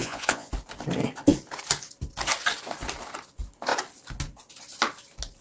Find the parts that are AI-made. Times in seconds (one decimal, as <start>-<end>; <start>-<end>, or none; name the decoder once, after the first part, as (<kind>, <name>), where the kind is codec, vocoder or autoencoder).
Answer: 0.0-0.5 (vocoder, Vocos)